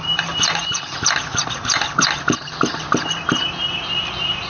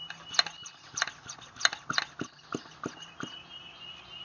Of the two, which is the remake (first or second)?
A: first